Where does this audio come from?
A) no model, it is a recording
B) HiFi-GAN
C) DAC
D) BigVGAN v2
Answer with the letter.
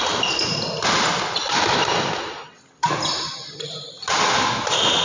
A